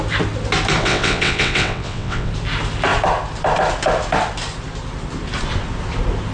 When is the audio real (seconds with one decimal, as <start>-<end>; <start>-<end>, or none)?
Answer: 0.0-0.8; 2.3-6.3